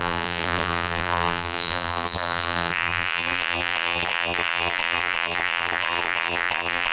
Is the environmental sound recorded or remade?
remade